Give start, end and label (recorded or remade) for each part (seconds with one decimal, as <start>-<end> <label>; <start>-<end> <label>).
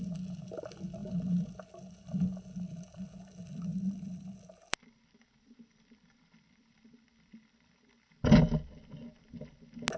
0.0-1.0 recorded; 1.0-1.5 remade; 1.5-3.7 recorded; 3.7-8.0 remade; 8.0-10.0 recorded